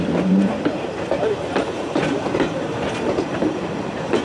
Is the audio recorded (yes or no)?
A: no